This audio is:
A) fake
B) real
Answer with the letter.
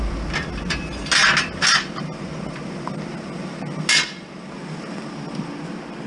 B